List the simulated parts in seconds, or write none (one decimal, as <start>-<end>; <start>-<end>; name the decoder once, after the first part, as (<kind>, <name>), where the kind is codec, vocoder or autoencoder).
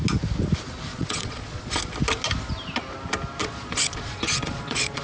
0.9-1.8 (vocoder, Vocos); 3.4-5.0